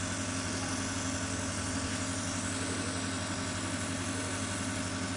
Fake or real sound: real